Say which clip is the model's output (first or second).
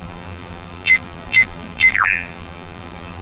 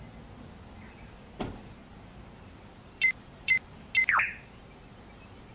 first